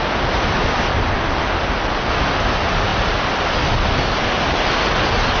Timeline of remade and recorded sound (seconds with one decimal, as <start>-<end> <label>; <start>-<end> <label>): 0.0-5.4 recorded